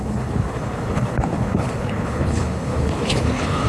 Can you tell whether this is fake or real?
fake